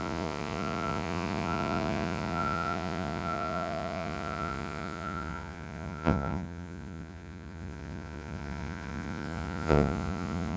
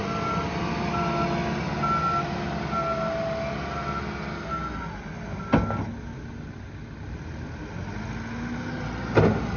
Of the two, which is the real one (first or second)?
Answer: second